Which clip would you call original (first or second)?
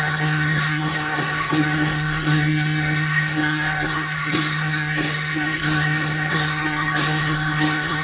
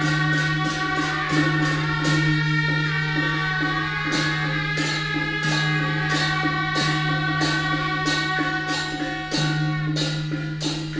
second